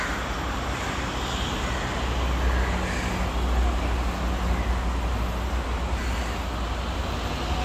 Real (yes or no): yes